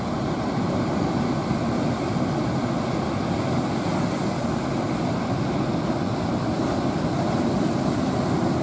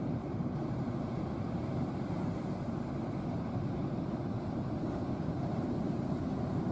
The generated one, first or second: second